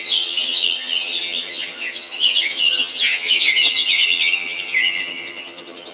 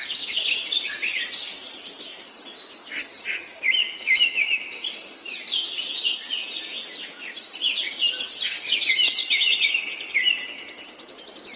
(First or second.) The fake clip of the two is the first